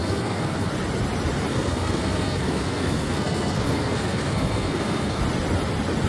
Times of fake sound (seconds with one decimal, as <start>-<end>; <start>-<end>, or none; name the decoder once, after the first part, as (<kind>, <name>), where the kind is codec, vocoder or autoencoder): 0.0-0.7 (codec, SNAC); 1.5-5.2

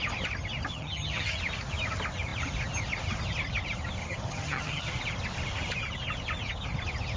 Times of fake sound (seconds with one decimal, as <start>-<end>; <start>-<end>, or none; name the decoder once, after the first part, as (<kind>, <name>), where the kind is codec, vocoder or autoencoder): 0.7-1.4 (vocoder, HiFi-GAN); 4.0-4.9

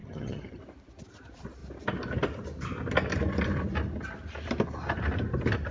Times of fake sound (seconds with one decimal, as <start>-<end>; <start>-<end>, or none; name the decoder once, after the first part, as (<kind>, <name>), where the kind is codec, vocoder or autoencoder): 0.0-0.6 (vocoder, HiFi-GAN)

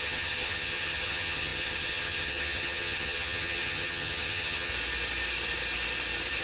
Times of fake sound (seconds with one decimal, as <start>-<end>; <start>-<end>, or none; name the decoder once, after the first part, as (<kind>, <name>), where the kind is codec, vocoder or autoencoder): 0.0-4.7 (vocoder, HiFi-GAN)

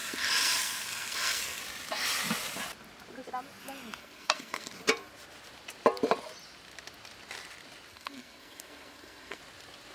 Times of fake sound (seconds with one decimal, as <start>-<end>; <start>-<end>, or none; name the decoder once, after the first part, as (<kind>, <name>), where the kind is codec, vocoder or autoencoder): 0.0-1.6 (codec, SNAC); 4.0-4.7; 7.9-9.4

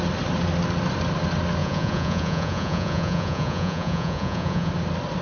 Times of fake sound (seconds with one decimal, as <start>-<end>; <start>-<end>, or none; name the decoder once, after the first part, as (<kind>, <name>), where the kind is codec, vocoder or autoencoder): 1.6-4.7 (vocoder, Vocos)

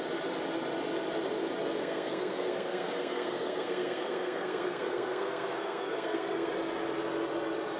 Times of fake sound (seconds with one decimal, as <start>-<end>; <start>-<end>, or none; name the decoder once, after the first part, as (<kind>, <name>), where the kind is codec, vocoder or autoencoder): 1.8-6.5 (codec, SNAC)

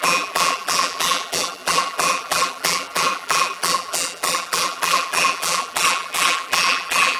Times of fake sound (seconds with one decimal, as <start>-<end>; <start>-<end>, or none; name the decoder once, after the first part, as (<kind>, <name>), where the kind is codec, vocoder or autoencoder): 0.0-7.2 (vocoder, BigVGAN v2)